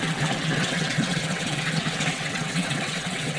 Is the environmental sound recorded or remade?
remade